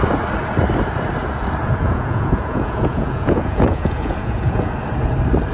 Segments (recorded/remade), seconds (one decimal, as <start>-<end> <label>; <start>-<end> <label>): 0.0-1.6 recorded; 1.6-4.7 remade; 4.7-5.5 recorded